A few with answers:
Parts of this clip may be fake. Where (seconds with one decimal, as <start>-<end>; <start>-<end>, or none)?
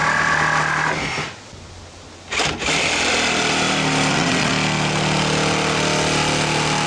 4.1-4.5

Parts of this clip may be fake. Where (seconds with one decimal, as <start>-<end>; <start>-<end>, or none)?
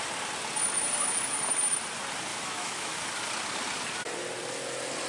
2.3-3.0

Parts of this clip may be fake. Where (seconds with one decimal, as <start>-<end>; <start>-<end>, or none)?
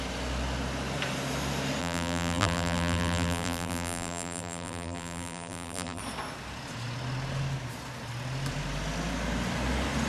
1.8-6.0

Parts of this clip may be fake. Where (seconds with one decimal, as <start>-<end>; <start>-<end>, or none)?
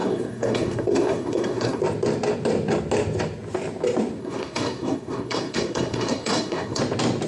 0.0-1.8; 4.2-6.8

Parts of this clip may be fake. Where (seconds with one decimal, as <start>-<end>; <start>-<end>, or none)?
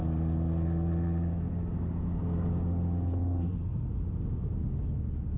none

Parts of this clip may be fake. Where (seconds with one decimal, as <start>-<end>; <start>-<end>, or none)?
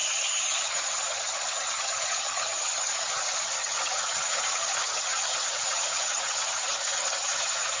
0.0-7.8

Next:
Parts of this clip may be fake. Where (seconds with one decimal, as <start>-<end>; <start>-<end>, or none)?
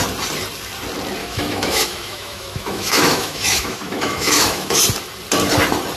1.2-4.8